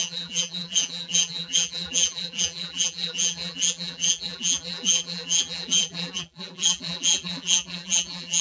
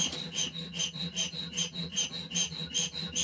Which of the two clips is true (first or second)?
second